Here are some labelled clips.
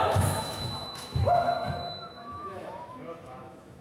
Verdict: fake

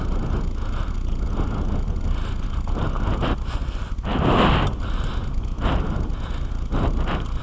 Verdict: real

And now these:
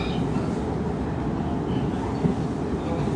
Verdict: real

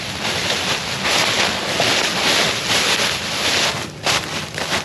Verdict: real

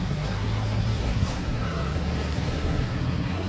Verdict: fake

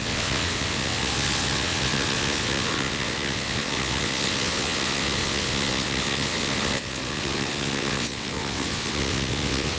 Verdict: fake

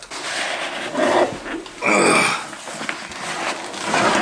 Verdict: real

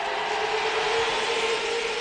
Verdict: real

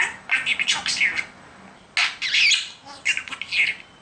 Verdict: real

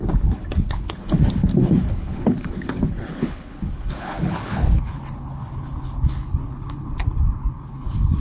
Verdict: fake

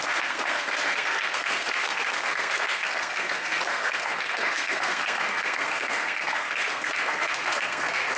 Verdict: fake